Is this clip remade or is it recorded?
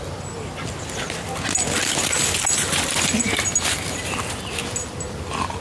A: recorded